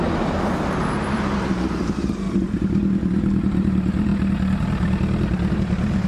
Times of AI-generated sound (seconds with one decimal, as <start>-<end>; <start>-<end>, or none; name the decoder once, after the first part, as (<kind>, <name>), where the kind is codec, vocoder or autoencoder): 0.0-4.1 (vocoder, BigVGAN v2); 5.5-6.1